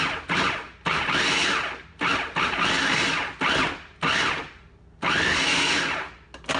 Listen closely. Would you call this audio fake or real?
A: real